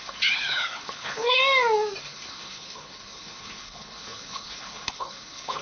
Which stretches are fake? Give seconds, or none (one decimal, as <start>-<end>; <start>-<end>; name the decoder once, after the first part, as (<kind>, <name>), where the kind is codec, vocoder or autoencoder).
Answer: 0.0-1.4 (codec, HILCodec); 2.0-5.6